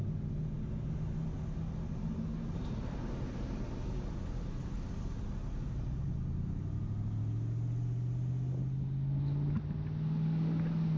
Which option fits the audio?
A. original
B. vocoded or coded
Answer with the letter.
A